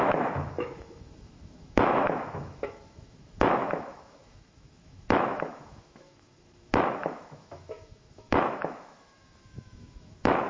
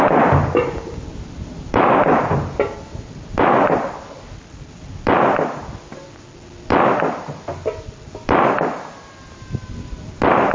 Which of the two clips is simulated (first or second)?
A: first